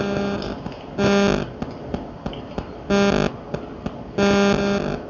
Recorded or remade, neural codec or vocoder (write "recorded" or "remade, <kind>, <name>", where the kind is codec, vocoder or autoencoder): recorded